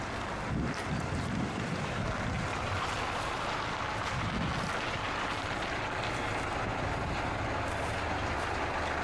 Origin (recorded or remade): recorded